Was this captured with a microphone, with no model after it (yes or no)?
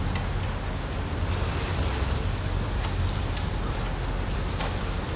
yes